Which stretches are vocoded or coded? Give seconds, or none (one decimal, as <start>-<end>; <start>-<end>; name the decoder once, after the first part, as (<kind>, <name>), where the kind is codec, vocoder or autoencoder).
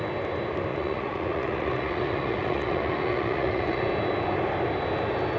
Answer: 0.7-3.8 (vocoder, Vocos)